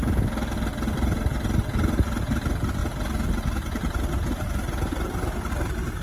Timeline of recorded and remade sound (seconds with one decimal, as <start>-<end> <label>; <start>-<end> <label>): 0.0-6.0 recorded